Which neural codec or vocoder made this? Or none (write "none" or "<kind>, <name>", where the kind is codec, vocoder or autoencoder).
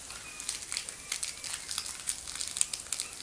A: none